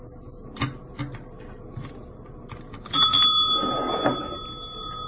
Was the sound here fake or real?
real